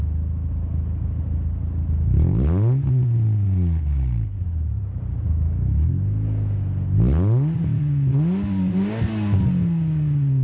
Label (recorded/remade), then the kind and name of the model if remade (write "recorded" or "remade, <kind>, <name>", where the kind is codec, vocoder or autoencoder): recorded